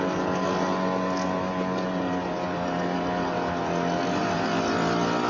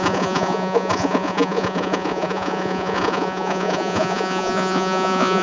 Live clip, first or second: first